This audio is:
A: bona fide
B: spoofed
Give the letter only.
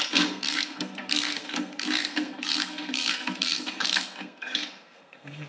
B